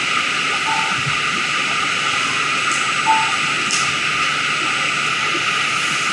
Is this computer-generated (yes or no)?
no